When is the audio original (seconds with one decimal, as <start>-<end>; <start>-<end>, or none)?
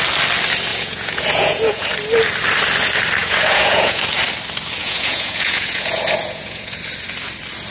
0.0-0.7; 1.9-3.2; 4.0-4.8; 6.8-7.7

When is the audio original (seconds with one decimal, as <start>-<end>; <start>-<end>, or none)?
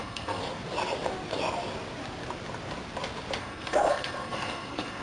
0.4-3.4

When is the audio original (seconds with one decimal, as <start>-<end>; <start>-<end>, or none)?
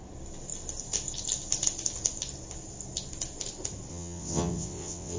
0.0-3.9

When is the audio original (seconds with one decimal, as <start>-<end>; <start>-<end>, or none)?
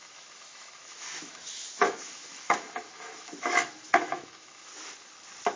4.7-5.6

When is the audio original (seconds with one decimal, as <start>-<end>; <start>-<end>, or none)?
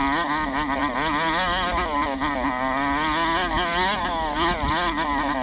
0.0-5.4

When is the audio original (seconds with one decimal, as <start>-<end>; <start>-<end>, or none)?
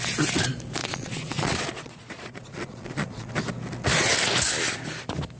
0.0-0.8; 3.3-5.4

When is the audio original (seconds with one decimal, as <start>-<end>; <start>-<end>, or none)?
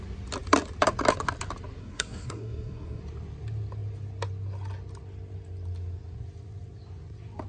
0.0-1.8; 3.0-7.5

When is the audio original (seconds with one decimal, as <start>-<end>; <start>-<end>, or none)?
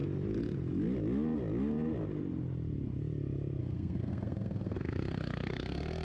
0.0-3.6